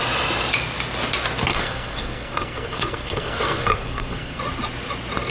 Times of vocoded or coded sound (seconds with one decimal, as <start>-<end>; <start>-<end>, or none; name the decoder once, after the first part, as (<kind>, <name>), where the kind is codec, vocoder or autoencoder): 1.5-4.4 (codec, SNAC)